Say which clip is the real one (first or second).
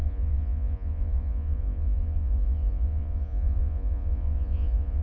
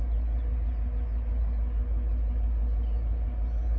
second